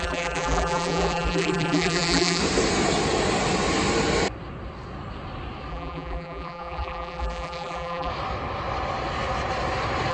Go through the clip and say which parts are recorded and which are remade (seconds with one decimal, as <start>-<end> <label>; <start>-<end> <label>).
0.0-2.4 remade; 2.4-5.7 recorded; 5.7-8.1 remade; 8.1-10.1 recorded